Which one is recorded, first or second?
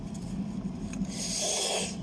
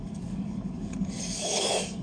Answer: first